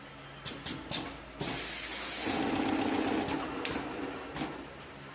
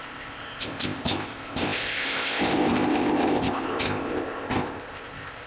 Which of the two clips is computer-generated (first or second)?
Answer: second